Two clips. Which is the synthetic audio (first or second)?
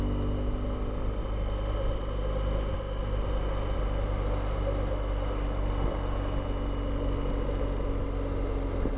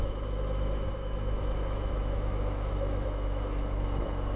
second